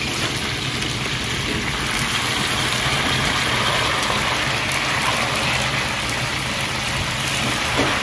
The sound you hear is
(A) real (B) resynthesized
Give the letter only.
A